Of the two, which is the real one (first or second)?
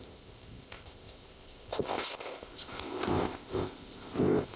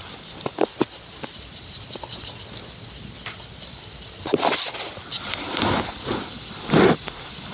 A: second